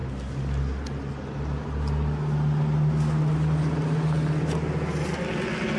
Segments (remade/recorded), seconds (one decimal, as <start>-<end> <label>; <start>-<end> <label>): 0.0-5.8 recorded